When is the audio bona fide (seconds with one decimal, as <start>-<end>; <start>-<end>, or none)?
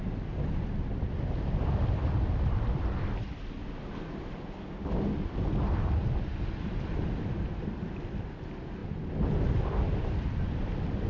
0.0-11.1